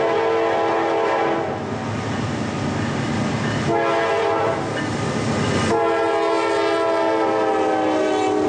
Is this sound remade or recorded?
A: recorded